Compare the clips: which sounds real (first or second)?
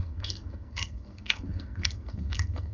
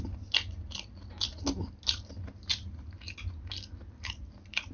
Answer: second